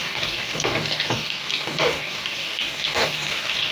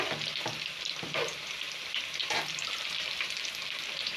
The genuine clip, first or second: second